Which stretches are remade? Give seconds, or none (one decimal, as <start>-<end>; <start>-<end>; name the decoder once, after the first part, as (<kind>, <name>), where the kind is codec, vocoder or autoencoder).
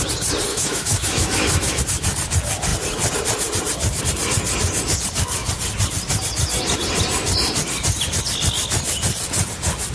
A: 0.5-1.8 (autoencoder, DAC-VAE)